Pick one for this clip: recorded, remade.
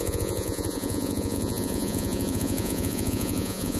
remade